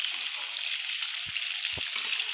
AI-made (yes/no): no